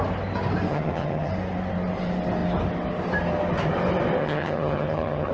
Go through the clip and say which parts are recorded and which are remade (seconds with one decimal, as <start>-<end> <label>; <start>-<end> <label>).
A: 0.0-0.7 recorded; 0.7-1.3 remade; 1.3-4.2 recorded; 4.2-5.3 remade